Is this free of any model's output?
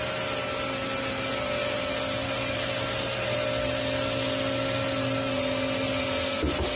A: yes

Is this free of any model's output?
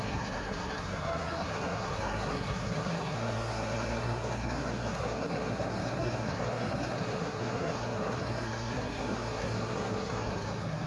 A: no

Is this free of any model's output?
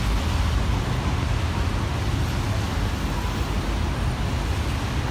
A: yes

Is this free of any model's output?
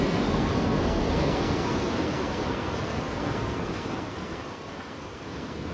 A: no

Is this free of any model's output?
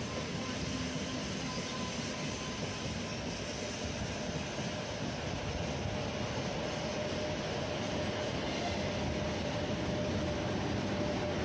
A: yes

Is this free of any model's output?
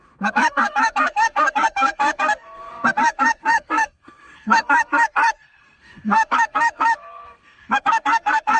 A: no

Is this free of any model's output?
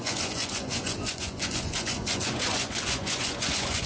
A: no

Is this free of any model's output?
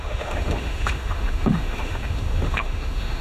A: no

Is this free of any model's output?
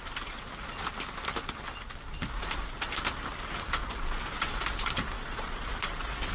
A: yes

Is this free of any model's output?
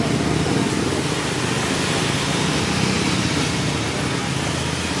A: yes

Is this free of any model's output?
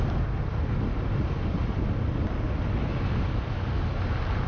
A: yes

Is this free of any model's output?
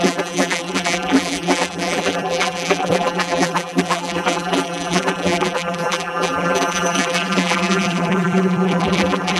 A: no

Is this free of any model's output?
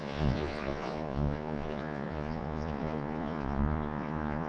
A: no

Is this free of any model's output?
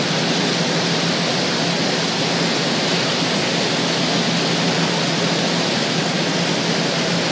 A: yes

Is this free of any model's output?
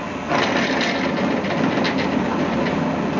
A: yes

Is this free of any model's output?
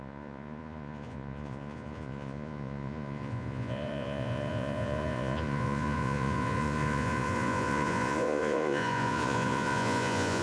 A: no